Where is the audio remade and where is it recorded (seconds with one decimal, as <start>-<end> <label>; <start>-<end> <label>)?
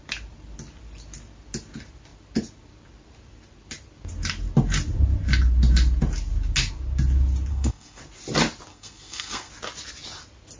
0.0-7.5 recorded; 7.5-8.0 remade; 8.0-8.7 recorded; 8.7-9.5 remade; 9.5-10.6 recorded